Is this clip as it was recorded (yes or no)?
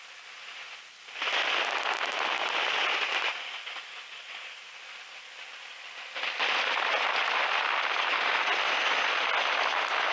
yes